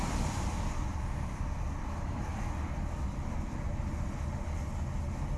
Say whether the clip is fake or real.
real